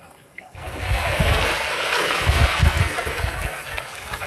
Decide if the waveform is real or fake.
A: fake